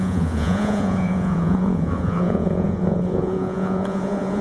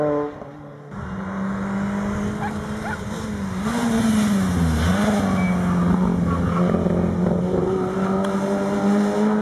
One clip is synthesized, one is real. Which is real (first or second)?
second